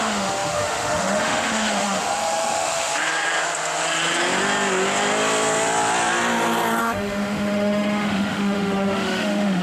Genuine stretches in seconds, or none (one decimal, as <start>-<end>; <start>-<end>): 2.9-6.8